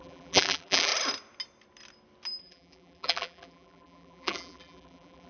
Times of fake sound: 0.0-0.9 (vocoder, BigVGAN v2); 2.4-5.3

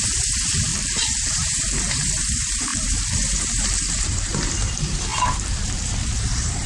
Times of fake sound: 0.0-0.7 (vocoder, BigVGAN v2); 1.3-6.7

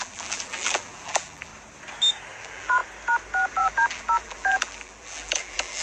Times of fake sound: 0.0-1.5 (vocoder, BigVGAN v2); 2.4-2.8; 3.5-5.8

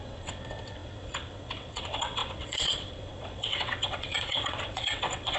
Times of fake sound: 0.0-5.4 (vocoder, WaveNeXt)

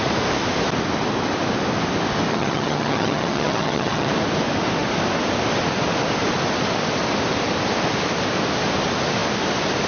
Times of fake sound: 2.3-4.1 (vocoder, HiFi-GAN)

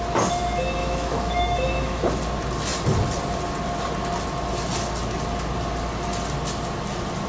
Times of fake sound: 0.8-2.2 (autoencoder, DAC-VAE)

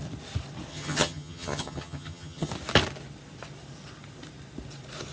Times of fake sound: 0.7-2.5 (vocoder, HiFi-GAN)

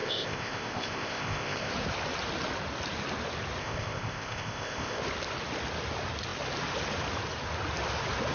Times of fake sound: 0.0-1.7 (codec, ZipCodec); 3.6-5.0